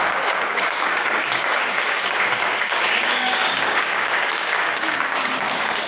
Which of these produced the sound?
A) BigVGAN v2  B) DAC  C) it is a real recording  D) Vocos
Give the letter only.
B